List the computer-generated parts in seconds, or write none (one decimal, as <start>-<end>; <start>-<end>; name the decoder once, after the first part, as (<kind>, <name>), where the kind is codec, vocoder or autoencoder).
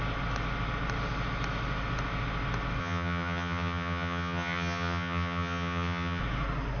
2.8-6.2 (vocoder, HiFi-GAN)